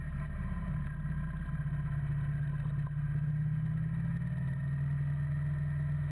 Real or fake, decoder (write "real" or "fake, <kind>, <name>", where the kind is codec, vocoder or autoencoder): real